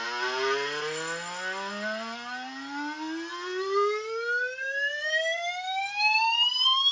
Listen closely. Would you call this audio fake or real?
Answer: real